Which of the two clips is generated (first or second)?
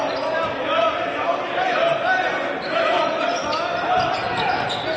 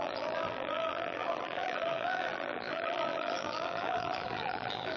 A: second